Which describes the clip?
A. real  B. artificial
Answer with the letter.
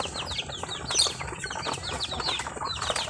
A